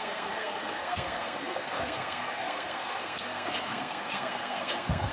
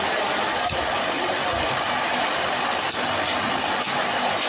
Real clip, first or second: second